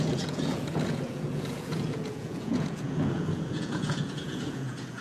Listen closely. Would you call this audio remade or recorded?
remade